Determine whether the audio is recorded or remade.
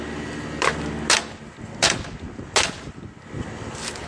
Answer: recorded